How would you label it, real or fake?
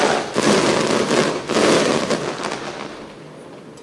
real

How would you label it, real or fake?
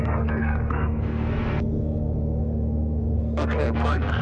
fake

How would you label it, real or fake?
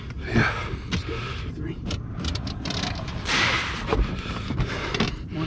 real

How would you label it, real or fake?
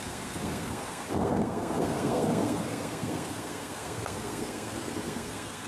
fake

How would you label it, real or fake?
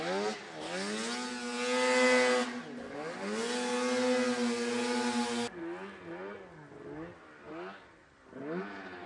real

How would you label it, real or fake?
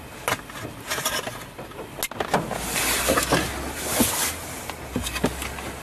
real